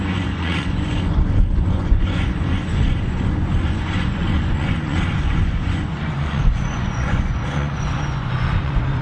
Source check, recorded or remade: remade